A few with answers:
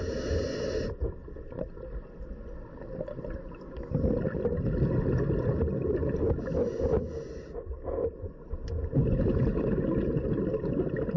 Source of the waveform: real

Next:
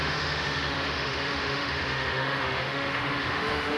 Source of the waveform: fake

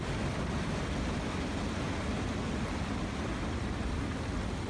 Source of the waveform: real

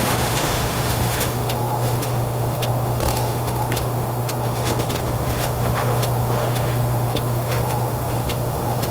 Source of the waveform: fake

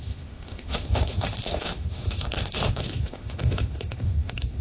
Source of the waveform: fake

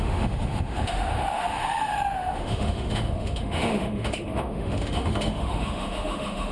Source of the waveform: fake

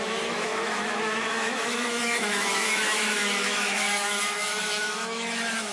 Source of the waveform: fake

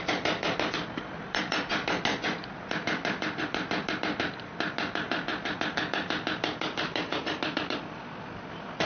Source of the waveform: real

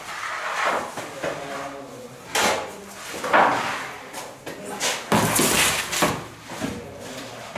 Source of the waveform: real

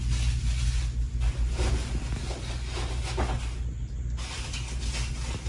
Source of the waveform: real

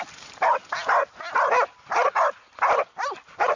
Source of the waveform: real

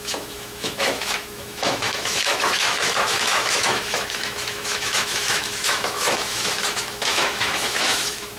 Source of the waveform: fake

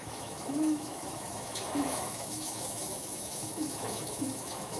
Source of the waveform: fake